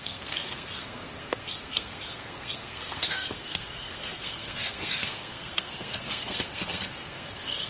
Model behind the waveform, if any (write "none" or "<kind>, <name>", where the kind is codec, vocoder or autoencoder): codec, SNAC